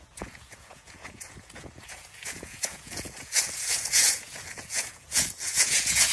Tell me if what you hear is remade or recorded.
remade